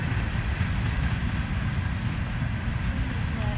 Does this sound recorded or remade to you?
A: recorded